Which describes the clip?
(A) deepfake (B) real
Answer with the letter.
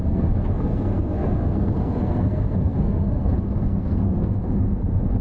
A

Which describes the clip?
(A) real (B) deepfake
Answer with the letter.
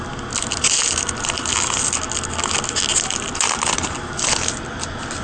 A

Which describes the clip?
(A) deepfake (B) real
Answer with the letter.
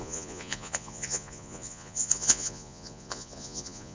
A